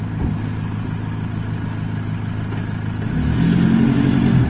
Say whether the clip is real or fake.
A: real